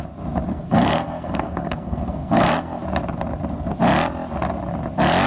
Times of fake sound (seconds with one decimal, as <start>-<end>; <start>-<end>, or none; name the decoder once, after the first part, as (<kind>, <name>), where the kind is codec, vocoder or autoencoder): 0.5-2.8 (codec, SNAC)